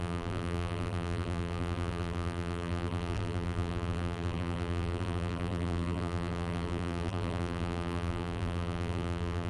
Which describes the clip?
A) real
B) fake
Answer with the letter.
B